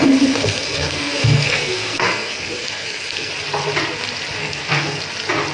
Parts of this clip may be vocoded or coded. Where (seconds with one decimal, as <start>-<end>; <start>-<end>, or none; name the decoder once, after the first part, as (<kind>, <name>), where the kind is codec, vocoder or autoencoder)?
0.0-3.3 (codec, SNAC); 4.4-5.0